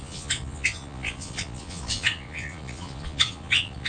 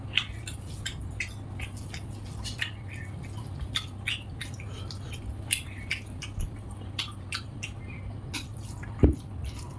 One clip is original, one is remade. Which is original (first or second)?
second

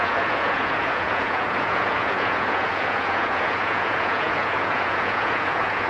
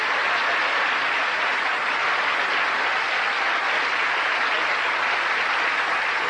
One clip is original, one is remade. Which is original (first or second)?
second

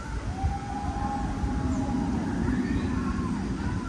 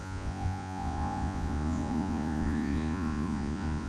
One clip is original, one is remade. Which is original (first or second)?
first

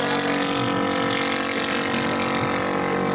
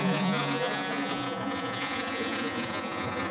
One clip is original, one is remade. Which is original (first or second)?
first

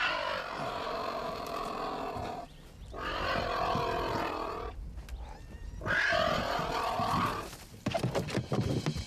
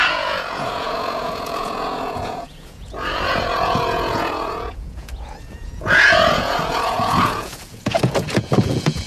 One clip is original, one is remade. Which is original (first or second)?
first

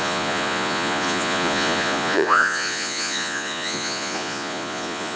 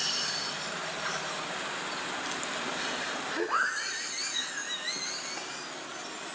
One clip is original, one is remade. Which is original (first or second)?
second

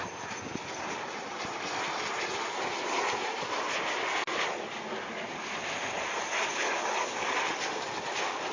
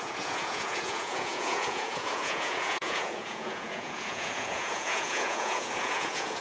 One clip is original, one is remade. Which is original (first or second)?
first